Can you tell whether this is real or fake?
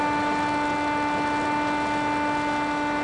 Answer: real